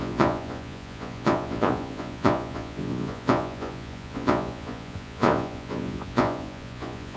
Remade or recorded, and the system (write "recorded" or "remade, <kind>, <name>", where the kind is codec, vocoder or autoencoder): remade, vocoder, Vocos